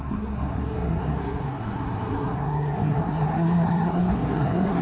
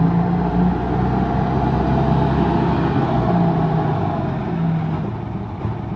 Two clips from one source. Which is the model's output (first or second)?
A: first